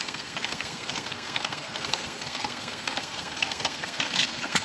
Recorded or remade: remade